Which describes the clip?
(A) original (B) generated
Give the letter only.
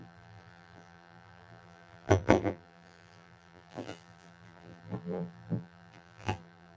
B